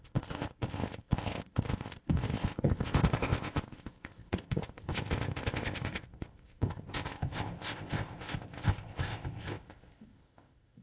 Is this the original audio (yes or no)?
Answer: no